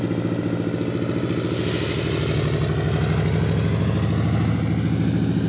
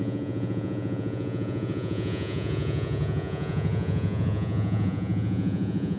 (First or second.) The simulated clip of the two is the second